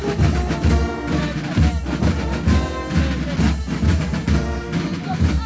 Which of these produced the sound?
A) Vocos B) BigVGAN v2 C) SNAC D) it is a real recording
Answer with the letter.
D